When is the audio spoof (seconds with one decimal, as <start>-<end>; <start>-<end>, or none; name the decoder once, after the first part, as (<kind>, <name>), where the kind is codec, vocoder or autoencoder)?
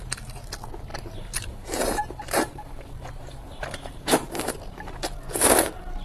0.9-4.5 (vocoder, BigVGAN v2)